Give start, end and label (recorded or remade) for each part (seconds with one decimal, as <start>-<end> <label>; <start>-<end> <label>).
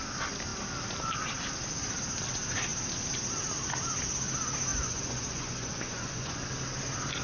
0.0-4.7 recorded; 4.7-6.4 remade; 6.4-7.2 recorded